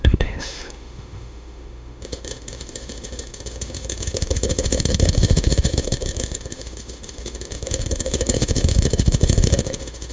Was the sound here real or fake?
fake